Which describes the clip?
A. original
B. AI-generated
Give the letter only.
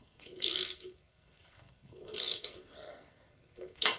B